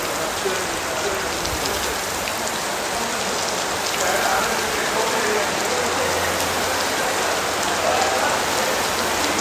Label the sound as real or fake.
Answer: real